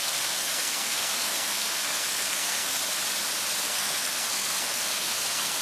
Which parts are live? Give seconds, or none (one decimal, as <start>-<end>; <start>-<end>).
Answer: 2.8-3.6